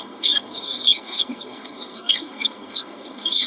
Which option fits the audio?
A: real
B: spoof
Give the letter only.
B